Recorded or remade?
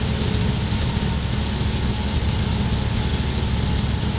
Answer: recorded